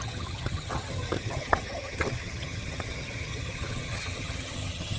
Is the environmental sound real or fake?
fake